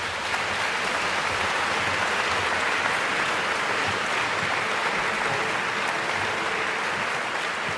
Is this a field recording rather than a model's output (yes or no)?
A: yes